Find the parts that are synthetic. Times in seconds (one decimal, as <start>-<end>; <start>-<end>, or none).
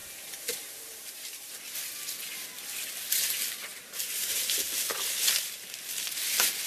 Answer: 0.0-1.6; 3.7-4.6